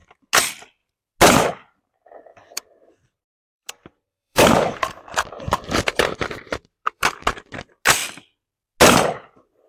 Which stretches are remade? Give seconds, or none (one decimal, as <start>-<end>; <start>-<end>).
2.3-7.2